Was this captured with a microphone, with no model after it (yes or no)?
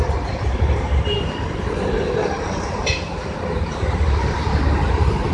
no